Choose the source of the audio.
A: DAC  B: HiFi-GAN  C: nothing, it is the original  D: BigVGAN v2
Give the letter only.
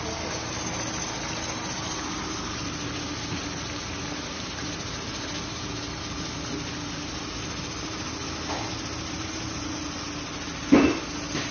C